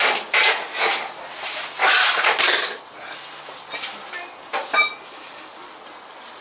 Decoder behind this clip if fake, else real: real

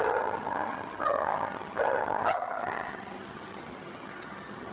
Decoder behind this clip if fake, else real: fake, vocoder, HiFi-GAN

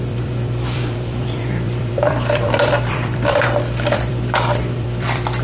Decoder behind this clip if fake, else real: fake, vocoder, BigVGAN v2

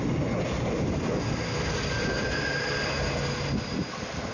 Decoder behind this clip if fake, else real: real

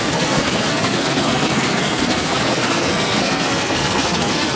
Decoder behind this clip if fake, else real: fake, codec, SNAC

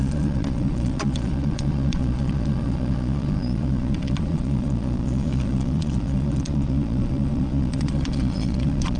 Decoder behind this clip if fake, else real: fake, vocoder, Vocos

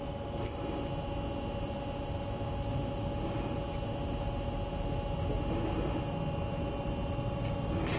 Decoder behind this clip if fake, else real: real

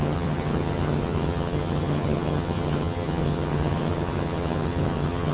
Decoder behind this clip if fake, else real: fake, vocoder, HiFi-GAN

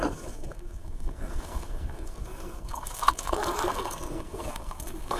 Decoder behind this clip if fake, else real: fake, codec, SNAC